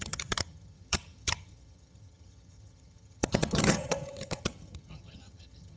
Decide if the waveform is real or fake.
fake